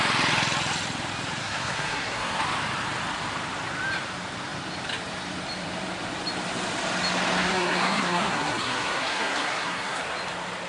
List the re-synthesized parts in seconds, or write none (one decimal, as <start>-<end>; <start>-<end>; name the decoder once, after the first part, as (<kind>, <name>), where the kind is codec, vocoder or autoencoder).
1.4-2.4 (codec, SNAC); 7.4-10.0